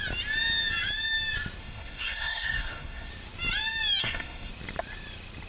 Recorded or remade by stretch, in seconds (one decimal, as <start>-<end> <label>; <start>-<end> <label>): 0.0-1.6 recorded; 1.6-3.1 remade; 3.1-4.0 recorded; 4.0-4.5 remade; 4.5-5.5 recorded